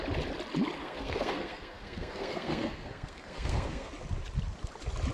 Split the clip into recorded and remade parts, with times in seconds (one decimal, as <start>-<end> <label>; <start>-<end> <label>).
0.0-0.8 recorded; 0.8-3.9 remade; 3.9-5.1 recorded